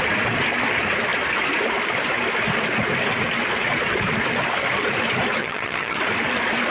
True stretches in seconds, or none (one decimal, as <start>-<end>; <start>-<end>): 0.0-5.4; 6.0-6.7